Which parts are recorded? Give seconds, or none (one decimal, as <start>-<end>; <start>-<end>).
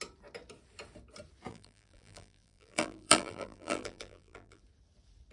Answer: 0.0-1.5; 4.6-5.3